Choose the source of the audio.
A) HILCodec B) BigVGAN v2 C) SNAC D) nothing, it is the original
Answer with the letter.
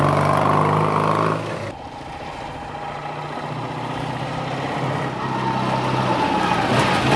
D